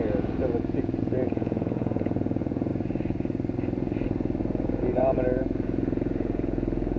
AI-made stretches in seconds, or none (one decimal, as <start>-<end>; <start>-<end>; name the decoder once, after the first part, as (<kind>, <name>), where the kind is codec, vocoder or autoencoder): 0.0-2.7 (vocoder, Vocos); 4.4-7.0